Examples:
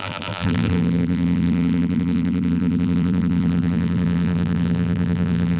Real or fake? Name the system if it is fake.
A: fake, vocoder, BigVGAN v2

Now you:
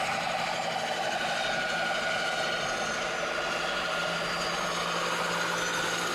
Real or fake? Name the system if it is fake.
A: real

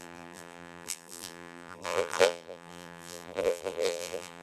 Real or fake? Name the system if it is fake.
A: fake, vocoder, BigVGAN v2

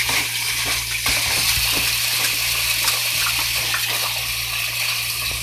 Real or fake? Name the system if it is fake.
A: fake, vocoder, BigVGAN v2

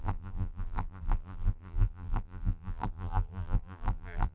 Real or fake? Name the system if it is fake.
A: fake, vocoder, BigVGAN v2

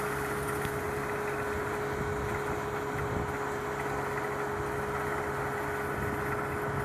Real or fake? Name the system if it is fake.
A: real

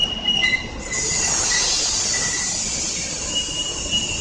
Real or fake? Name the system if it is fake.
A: real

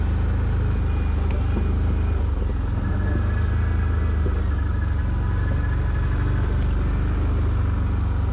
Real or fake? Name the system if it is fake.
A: real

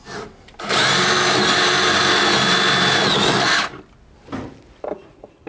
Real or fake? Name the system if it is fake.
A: real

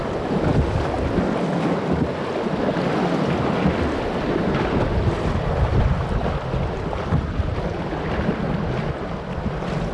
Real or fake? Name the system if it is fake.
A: real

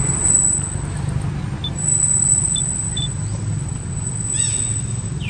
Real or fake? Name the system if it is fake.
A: real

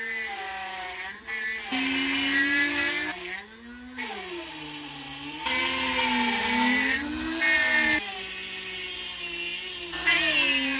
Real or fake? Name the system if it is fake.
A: real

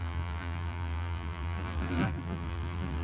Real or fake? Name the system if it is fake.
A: fake, vocoder, BigVGAN v2